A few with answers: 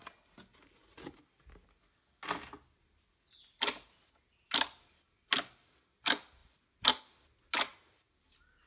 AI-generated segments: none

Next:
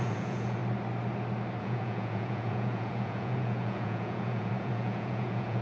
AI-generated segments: 0.0-0.6 (vocoder, Vocos); 1.6-5.6

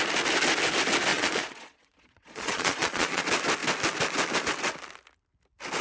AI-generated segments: 1.1-3.2 (vocoder, Vocos)

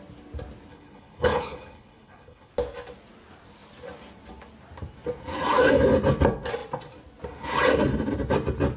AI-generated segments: 0.7-2.5 (codec, HILCodec)

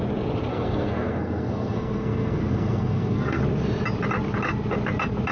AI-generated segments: 0.5-3.4 (codec, SNAC)